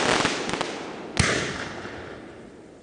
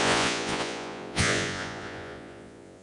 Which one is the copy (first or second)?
second